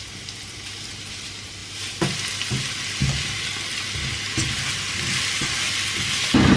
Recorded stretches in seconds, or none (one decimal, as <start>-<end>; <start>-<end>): 0.0-6.6